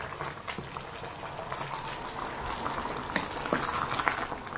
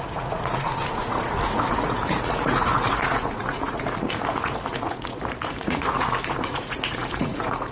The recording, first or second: first